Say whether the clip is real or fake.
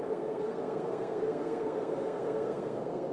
fake